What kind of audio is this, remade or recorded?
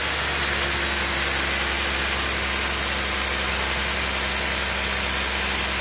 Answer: recorded